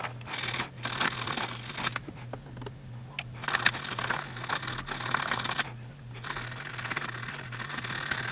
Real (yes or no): yes